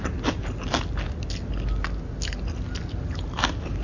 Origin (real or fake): real